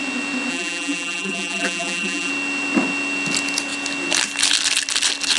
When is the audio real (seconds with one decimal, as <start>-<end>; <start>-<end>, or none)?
0.0-0.5; 2.3-5.4